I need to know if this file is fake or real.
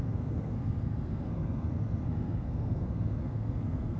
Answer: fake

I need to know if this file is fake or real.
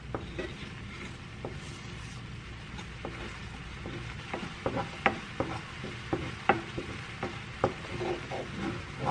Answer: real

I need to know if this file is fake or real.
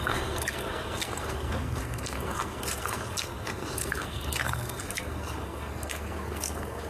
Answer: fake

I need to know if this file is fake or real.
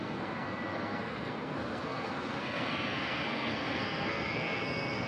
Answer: fake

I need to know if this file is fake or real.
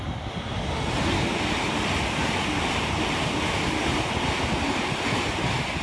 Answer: real